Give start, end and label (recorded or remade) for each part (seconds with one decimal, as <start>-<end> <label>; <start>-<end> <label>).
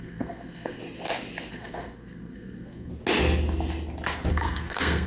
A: 0.0-0.8 remade; 0.8-1.5 recorded; 1.5-2.9 remade; 2.9-4.3 recorded; 4.3-5.1 remade